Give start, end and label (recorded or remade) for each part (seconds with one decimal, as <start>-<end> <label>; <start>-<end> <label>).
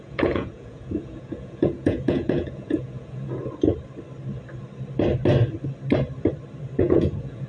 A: 0.0-3.4 remade; 3.4-6.8 recorded; 6.8-7.5 remade